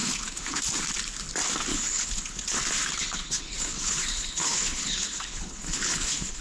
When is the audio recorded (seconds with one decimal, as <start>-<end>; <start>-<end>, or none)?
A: 0.6-1.7; 2.6-3.0